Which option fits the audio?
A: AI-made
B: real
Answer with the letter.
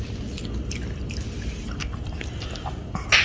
B